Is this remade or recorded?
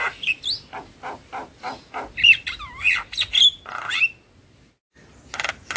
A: recorded